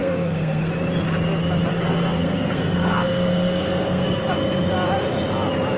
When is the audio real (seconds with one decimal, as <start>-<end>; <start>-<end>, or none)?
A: 0.7-1.7; 4.2-5.8